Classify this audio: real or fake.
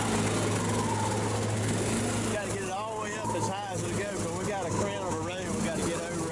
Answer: real